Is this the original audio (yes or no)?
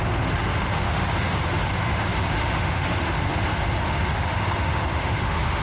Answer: no